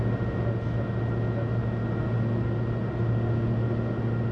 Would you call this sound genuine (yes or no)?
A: yes